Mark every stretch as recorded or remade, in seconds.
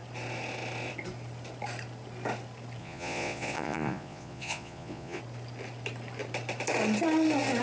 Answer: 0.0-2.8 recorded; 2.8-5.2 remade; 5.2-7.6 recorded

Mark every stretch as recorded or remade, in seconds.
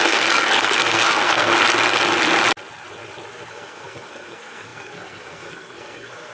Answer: 0.0-1.5 remade; 1.5-3.5 recorded; 3.5-6.3 remade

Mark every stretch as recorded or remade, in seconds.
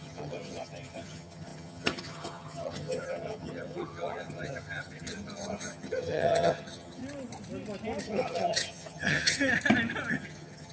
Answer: 0.0-7.0 remade; 7.0-8.0 recorded; 8.0-9.5 remade; 9.5-10.1 recorded; 10.1-10.7 remade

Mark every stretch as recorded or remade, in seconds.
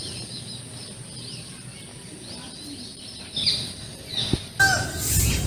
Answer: 0.0-5.5 recorded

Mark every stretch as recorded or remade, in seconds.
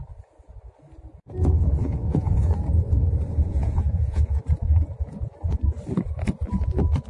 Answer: 0.0-1.8 recorded; 1.8-2.5 remade; 2.5-3.5 recorded; 3.5-4.4 remade; 4.4-7.1 recorded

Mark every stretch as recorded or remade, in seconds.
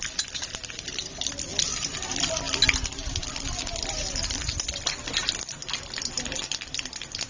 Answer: 0.0-7.3 recorded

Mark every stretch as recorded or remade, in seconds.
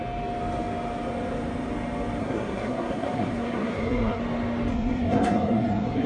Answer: 0.0-2.2 recorded; 2.2-4.2 remade; 4.2-4.7 recorded; 4.7-6.1 remade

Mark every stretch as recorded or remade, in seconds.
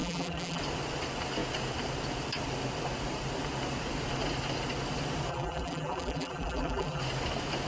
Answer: 0.0-0.6 remade; 0.6-5.3 recorded; 5.3-7.0 remade; 7.0-7.7 recorded